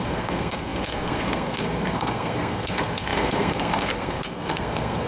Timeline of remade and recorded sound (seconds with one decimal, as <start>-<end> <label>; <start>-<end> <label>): 0.0-5.1 remade